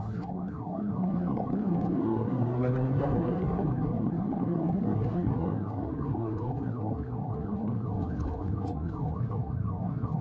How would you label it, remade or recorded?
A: remade